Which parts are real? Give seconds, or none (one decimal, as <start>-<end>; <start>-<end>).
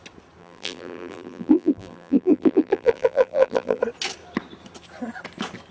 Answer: 0.0-0.4; 3.8-5.7